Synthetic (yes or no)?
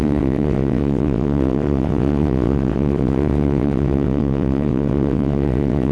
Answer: yes